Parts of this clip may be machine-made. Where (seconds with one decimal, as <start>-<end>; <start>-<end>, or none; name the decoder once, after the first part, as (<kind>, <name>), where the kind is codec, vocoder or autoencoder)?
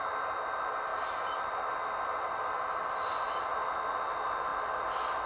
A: 0.9-1.7 (vocoder, BigVGAN v2)